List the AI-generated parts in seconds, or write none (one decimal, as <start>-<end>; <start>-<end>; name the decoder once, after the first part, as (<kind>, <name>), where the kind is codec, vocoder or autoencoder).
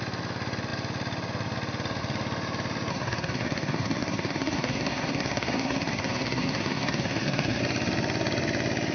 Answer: 2.9-7.6 (codec, SNAC)